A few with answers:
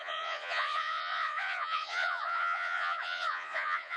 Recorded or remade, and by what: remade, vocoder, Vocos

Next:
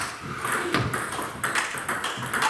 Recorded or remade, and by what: recorded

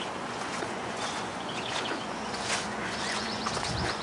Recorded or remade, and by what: remade, vocoder, Vocos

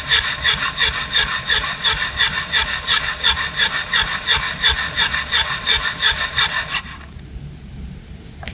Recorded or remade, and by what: remade, vocoder, BigVGAN v2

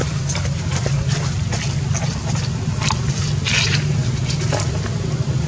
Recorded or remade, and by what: recorded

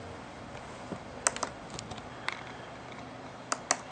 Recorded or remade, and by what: recorded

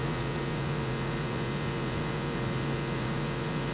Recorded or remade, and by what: remade, vocoder, Vocos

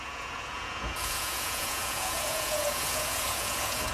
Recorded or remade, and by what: remade, vocoder, Vocos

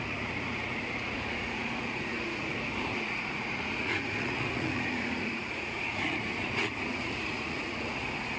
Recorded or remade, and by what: remade, vocoder, Vocos